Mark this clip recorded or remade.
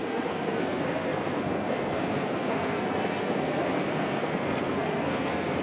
remade